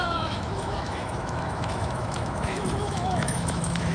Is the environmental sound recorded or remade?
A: remade